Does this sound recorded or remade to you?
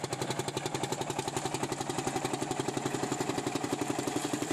remade